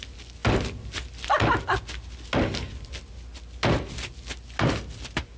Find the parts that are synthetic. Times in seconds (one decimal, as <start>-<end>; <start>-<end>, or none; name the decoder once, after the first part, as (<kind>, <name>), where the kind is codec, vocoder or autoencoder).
none